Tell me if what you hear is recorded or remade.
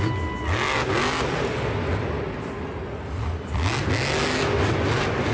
recorded